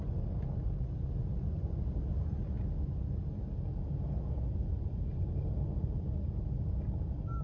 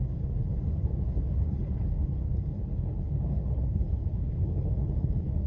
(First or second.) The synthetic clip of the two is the second